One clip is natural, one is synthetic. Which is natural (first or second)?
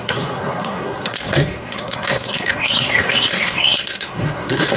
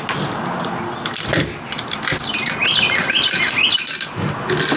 second